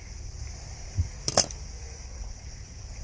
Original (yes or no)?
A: yes